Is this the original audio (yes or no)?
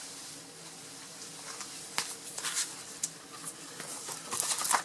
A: yes